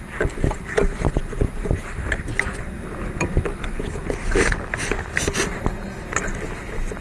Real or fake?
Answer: real